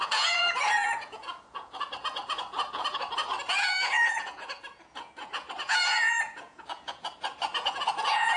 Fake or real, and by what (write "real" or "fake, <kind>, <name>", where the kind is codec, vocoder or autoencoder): fake, vocoder, Vocos